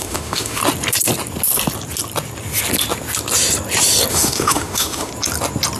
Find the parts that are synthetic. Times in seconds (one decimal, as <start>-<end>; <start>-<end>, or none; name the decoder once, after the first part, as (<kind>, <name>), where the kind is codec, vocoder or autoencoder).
0.0-0.6 (autoencoder, DAC-VAE); 4.1-5.1

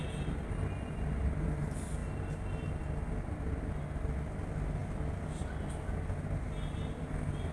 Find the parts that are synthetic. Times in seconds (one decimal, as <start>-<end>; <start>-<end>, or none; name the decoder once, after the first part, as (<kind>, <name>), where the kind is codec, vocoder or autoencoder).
none

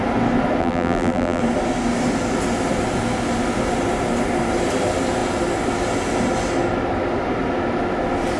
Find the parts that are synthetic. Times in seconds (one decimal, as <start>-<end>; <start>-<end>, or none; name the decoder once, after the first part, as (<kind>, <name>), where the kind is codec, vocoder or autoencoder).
0.6-1.4 (vocoder, BigVGAN v2)

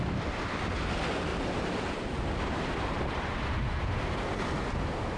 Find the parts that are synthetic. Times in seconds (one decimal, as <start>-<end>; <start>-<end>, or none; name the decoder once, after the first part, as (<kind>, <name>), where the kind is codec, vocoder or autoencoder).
1.3-4.4 (vocoder, BigVGAN v2)

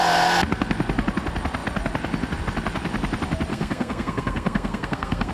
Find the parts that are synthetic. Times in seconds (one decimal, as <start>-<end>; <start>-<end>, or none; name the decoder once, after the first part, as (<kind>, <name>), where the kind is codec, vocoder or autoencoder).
3.5-5.3 (codec, SNAC)

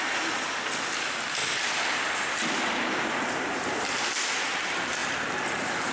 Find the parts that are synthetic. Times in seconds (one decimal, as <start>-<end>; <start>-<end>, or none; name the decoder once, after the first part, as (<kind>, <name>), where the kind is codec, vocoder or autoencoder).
1.4-2.0 (vocoder, BigVGAN v2)

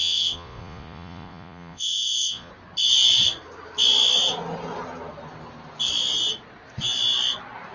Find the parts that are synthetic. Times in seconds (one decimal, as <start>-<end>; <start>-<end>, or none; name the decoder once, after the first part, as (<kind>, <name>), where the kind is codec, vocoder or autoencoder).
0.0-2.5 (vocoder, Vocos)

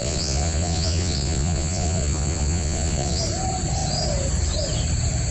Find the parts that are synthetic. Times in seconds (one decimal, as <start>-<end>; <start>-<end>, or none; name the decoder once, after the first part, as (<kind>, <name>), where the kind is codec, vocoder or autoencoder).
0.0-3.2 (vocoder, Vocos)